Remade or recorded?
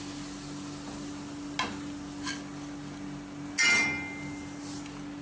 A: recorded